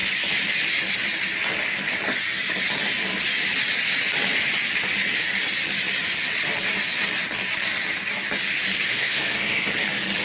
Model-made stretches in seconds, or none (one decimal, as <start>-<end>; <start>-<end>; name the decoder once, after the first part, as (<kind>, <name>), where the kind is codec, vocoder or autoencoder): 8.9-9.7 (codec, SNAC)